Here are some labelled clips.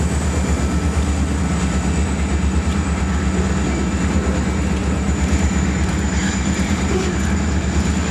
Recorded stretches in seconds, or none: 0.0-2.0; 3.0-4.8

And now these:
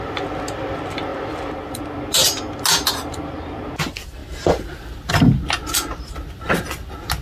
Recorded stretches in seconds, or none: 0.0-1.1; 1.8-7.2

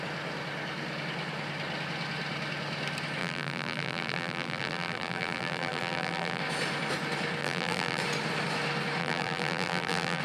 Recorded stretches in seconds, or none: 0.0-3.2; 6.4-7.4; 8.0-9.0